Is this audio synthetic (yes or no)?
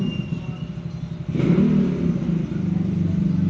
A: no